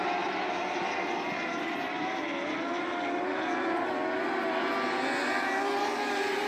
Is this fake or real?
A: real